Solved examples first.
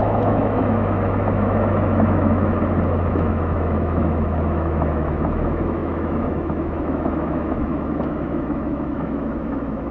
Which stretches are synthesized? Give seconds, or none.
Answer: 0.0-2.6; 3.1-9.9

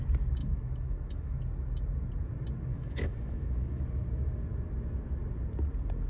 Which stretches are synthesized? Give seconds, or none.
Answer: 0.4-1.4; 2.7-3.8

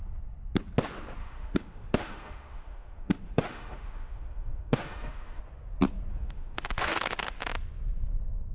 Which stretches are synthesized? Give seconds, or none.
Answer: 1.2-5.4; 6.1-7.4

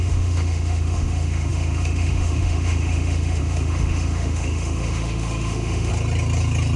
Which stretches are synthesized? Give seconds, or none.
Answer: 0.0-5.9